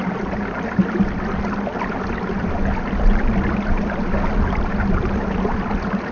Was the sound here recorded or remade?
recorded